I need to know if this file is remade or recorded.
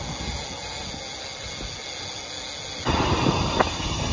recorded